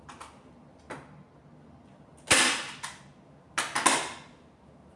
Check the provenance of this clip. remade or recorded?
recorded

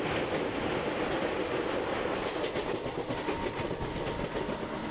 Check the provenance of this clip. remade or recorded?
recorded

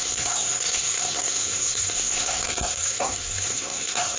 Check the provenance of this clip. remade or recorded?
remade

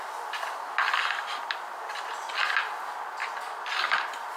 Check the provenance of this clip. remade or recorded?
recorded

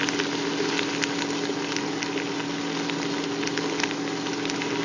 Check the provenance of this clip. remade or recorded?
recorded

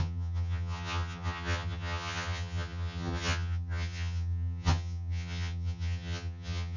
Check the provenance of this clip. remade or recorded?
remade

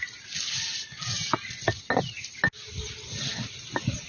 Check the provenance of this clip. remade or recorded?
recorded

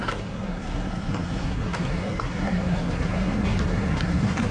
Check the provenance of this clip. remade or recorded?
remade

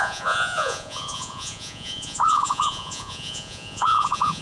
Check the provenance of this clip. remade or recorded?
remade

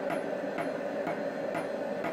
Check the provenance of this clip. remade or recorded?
recorded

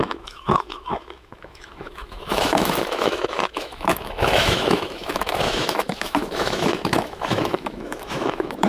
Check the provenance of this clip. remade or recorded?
remade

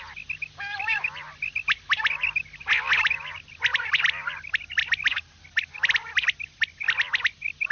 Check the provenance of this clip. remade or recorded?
recorded